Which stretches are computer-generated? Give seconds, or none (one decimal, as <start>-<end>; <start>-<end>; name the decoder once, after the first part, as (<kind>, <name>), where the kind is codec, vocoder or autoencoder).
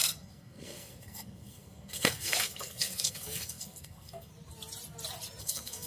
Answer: 0.0-4.3 (codec, SNAC); 5.4-5.9